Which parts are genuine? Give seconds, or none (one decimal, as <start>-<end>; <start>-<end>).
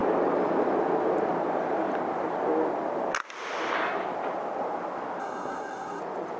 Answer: 0.0-5.2; 6.0-6.4